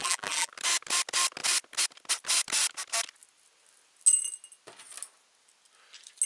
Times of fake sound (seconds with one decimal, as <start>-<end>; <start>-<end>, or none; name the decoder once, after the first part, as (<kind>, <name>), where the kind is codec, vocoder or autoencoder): 0.0-0.5 (vocoder, BigVGAN v2)